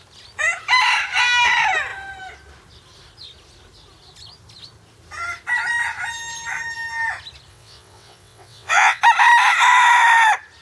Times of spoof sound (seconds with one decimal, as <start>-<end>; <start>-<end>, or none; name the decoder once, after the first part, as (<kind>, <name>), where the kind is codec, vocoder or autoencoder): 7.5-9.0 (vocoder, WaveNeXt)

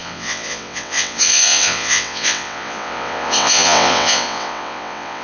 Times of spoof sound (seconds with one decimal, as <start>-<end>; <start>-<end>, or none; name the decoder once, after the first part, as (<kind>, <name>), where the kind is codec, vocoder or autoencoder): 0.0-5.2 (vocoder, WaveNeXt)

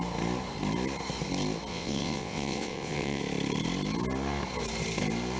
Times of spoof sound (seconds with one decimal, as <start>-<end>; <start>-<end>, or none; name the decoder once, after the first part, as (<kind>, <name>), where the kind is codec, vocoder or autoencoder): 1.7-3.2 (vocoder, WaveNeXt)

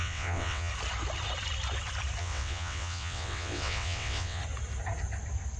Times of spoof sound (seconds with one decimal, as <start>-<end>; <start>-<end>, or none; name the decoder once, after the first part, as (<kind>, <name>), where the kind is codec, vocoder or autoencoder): 0.0-0.7 (vocoder, WaveNeXt); 2.2-4.4

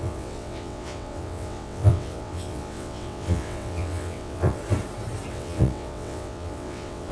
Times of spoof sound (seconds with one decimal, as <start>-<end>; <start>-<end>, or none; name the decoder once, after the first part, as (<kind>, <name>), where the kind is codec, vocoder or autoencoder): 0.0-4.6 (vocoder, WaveNeXt); 5.3-7.1